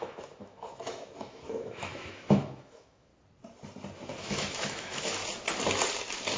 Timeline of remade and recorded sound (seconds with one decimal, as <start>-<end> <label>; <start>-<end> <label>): 0.0-3.1 remade; 3.1-4.2 recorded; 4.2-5.2 remade; 5.2-6.4 recorded